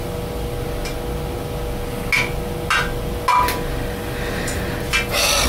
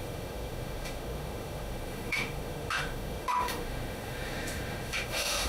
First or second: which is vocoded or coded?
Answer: second